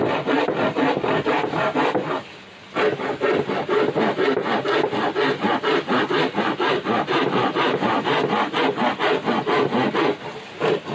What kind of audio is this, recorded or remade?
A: recorded